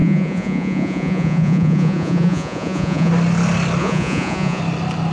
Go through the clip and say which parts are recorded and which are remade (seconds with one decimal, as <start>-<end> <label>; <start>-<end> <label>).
0.0-3.1 remade; 3.1-3.8 recorded; 3.8-4.6 remade; 4.6-5.1 recorded